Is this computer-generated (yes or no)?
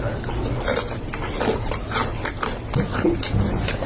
no